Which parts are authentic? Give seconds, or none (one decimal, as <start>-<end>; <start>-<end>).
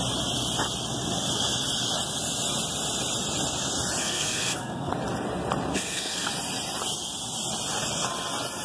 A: 0.0-4.0; 4.9-5.7; 6.3-8.6